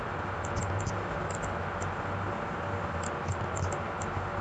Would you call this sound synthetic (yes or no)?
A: no